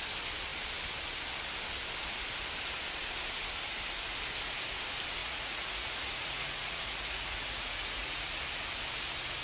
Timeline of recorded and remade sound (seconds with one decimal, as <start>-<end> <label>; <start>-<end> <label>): 0.0-5.2 recorded; 5.2-8.3 remade; 8.3-9.4 recorded